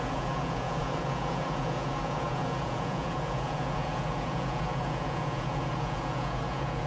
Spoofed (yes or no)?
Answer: yes